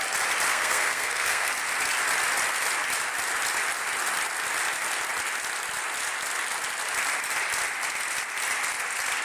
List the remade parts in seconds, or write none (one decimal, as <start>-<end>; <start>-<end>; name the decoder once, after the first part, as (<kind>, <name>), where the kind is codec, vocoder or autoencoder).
0.5-1.5 (codec, SNAC)